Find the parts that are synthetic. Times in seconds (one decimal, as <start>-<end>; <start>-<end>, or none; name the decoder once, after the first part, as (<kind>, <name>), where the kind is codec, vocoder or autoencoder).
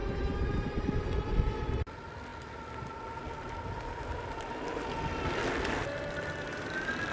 none